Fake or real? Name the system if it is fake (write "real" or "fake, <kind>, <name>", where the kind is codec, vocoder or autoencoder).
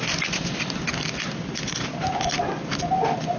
real